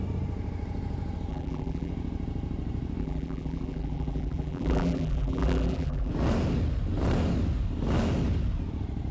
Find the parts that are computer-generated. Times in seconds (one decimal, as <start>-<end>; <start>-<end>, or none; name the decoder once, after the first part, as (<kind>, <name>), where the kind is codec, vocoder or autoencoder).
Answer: 1.3-1.9 (vocoder, BigVGAN v2); 3.0-6.1